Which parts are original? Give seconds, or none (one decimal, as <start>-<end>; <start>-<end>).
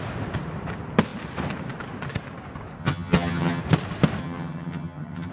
0.0-2.8; 3.6-4.2